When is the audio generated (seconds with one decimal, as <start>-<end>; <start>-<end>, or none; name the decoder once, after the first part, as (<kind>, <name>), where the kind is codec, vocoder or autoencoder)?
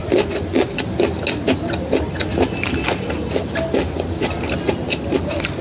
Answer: none